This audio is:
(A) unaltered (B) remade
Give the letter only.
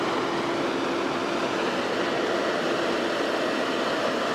A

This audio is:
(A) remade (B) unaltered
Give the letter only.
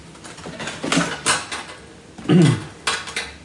B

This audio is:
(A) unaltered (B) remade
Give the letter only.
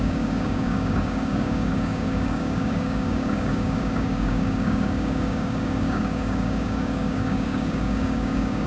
B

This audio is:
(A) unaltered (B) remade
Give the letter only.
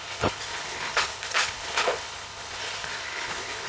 B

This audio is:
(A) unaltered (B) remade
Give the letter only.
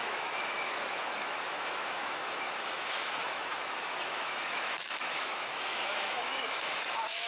B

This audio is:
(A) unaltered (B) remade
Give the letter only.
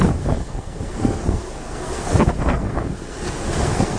B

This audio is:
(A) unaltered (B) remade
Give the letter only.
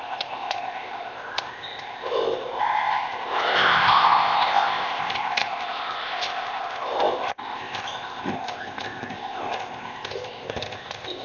B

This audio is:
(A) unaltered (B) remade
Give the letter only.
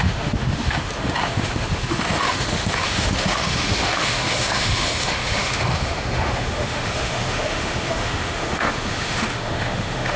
B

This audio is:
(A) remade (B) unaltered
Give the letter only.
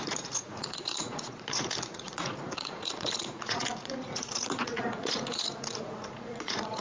A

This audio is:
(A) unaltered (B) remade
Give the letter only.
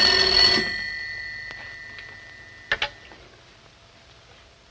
A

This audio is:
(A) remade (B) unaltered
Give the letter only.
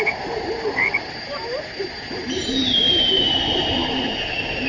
A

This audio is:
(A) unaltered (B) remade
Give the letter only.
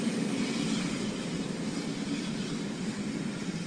B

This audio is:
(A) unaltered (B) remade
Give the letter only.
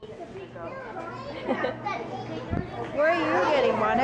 A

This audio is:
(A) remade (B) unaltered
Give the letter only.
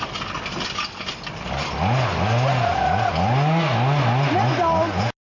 B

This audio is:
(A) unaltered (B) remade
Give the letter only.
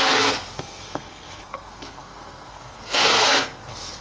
B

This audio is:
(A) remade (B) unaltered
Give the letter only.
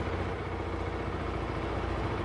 B